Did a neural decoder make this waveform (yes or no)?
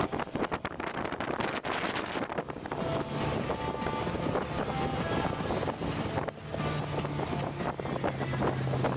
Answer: no